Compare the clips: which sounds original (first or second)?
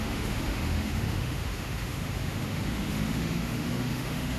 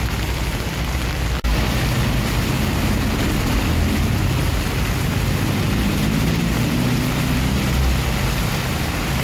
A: second